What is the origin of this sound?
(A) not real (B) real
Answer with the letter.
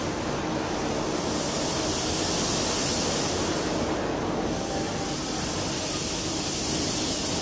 B